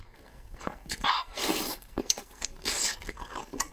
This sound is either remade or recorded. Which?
remade